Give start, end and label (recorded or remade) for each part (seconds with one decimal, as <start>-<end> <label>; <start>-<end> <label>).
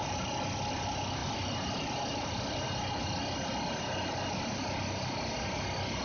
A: 0.0-0.7 remade; 0.7-1.2 recorded; 1.2-2.3 remade; 2.3-6.0 recorded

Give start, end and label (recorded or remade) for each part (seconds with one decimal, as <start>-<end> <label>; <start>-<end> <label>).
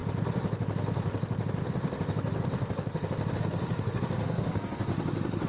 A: 0.0-3.3 recorded; 3.3-4.9 remade; 4.9-5.5 recorded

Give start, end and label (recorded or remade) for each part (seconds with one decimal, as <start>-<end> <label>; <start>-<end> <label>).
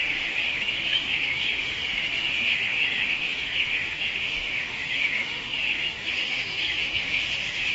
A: 0.0-7.7 remade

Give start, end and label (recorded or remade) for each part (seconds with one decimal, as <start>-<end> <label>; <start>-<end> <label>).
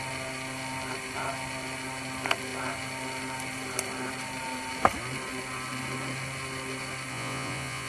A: 0.0-7.1 recorded; 7.1-7.9 remade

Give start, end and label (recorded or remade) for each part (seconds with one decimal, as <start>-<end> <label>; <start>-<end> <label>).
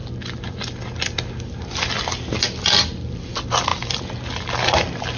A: 0.0-5.2 recorded